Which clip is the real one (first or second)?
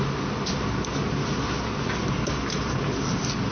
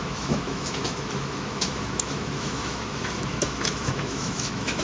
first